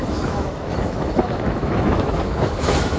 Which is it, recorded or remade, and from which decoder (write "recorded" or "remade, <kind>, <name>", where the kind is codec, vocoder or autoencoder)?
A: remade, autoencoder, DAC-VAE